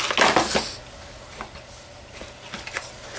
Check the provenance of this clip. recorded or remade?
recorded